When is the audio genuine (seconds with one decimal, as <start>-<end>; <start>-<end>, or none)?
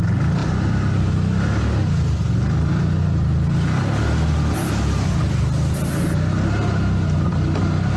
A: 0.0-0.4; 1.0-8.0